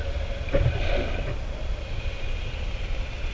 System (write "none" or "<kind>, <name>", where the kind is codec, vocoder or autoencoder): none